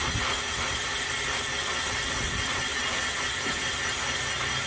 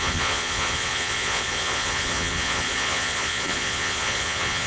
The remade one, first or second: second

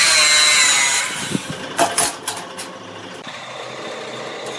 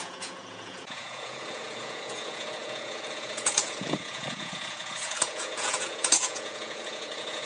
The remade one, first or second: second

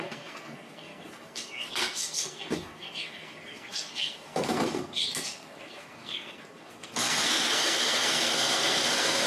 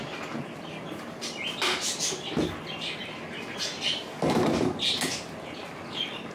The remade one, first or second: first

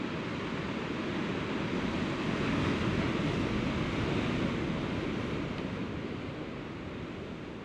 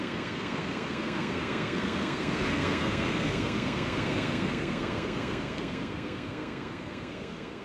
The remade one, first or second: second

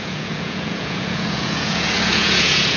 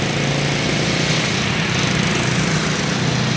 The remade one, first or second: first